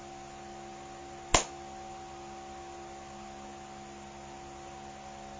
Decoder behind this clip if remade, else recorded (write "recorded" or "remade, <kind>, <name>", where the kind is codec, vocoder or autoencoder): recorded